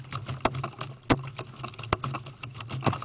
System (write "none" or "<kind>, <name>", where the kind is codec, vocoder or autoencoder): none